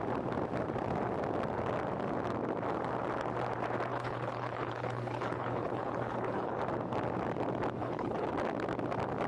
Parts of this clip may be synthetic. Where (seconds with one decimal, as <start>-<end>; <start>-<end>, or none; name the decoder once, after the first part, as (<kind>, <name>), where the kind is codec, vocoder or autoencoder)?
3.9-6.6 (codec, HILCodec); 7.8-8.3